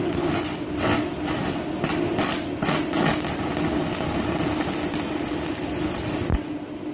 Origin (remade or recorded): recorded